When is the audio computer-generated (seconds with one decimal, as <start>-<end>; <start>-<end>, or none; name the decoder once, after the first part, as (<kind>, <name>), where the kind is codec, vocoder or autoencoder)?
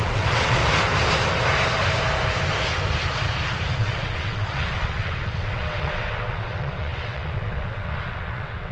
0.0-0.6 (vocoder, WaveNeXt); 3.8-8.7